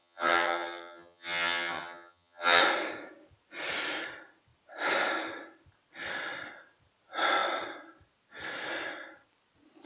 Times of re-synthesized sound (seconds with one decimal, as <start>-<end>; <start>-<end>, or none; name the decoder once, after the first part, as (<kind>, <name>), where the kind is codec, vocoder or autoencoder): 0.0-2.6 (vocoder, HiFi-GAN)